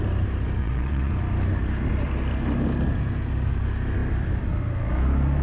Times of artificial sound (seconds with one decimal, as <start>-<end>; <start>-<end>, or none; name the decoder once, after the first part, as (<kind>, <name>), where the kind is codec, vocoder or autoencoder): 0.6-1.1 (vocoder, Vocos)